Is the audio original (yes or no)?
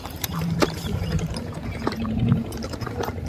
no